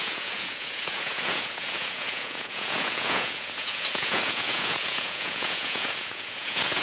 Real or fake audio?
fake